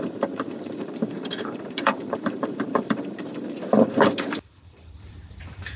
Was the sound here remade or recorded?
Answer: remade